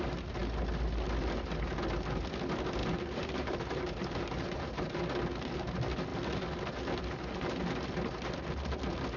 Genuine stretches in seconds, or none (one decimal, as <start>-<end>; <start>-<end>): 0.0-2.8; 5.0-9.2